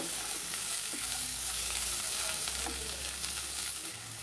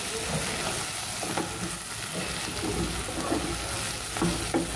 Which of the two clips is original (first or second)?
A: second